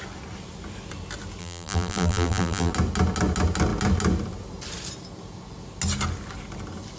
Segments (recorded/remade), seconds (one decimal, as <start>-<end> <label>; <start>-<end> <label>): 0.0-1.4 recorded; 1.4-2.7 remade; 2.7-7.0 recorded